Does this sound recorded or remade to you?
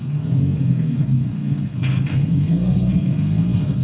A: remade